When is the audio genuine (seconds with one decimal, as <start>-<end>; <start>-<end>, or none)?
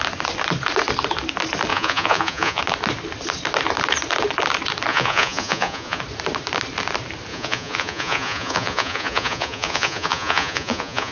0.0-1.7; 2.6-4.9; 6.0-7.3